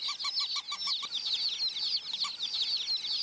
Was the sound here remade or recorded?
recorded